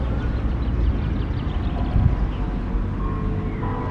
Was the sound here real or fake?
real